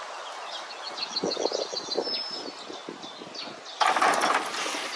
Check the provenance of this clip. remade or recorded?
recorded